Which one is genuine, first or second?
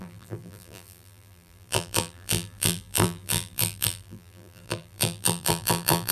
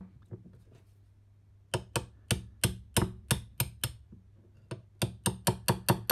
second